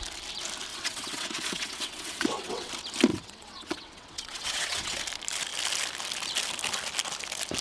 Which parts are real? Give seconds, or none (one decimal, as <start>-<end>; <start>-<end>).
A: 0.0-0.7; 2.7-3.1; 5.0-7.6